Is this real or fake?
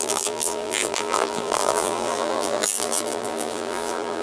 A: fake